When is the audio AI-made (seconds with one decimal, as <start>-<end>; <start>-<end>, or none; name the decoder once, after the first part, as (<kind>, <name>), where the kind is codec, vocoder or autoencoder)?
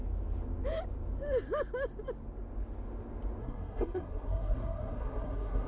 3.4-5.7 (codec, SNAC)